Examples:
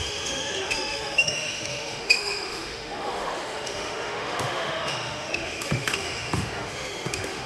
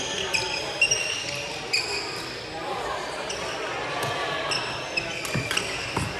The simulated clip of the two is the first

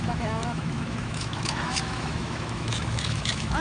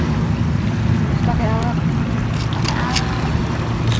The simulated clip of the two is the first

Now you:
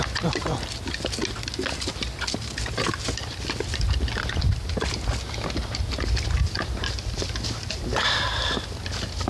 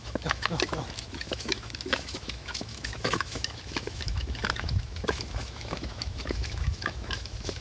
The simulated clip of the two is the second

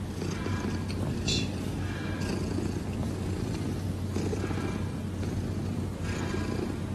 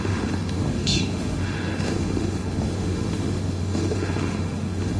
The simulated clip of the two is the second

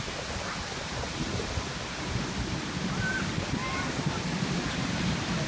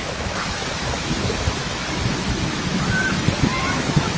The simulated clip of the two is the second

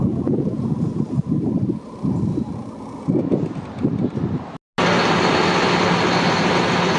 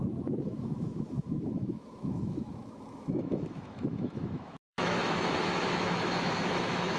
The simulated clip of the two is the second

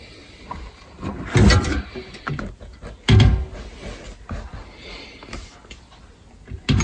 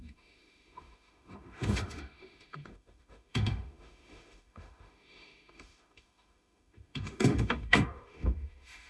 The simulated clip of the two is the second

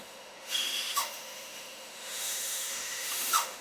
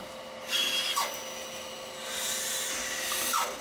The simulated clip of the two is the first